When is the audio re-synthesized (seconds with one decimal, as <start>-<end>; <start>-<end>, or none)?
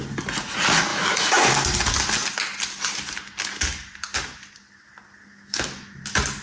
0.9-1.5; 5.3-6.0